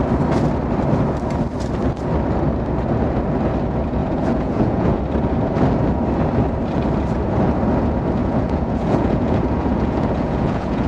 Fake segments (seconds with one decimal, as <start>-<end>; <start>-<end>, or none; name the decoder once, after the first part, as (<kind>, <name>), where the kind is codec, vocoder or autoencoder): 4.0-5.0 (vocoder, Vocos); 8.2-10.9